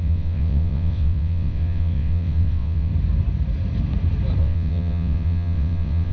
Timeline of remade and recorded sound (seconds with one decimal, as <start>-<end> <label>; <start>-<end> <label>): 0.0-2.9 remade; 2.9-4.4 recorded; 4.4-6.1 remade